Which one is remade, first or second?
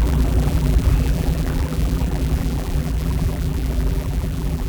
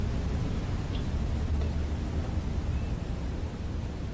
first